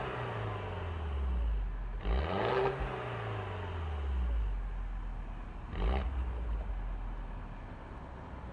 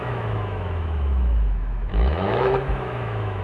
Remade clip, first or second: second